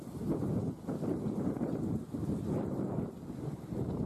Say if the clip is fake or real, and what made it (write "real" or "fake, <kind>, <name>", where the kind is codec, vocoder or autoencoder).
fake, vocoder, BigVGAN v2